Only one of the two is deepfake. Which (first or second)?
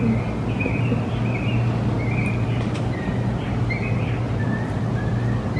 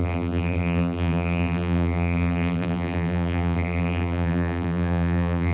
second